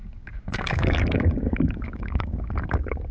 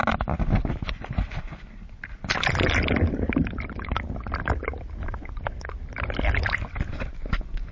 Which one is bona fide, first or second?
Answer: second